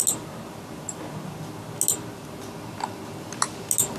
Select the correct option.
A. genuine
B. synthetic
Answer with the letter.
A